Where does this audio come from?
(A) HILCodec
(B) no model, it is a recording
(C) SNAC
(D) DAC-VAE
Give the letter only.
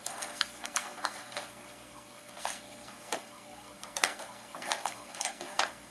C